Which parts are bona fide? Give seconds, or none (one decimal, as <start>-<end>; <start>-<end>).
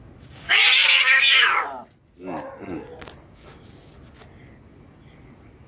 0.0-5.7